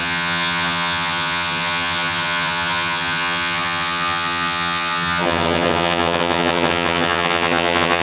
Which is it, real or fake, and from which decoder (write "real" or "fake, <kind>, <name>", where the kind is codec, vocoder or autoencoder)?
fake, vocoder, HiFi-GAN